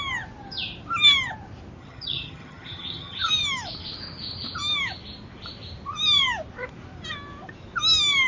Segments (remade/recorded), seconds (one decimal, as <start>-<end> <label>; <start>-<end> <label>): 0.0-1.8 recorded; 1.8-3.3 remade; 3.3-8.3 recorded